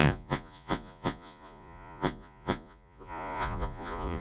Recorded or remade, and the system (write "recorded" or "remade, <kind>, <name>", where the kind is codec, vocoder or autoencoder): remade, vocoder, Vocos